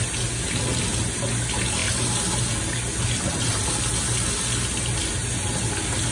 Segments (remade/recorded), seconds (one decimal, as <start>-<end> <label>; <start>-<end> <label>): 0.0-6.1 recorded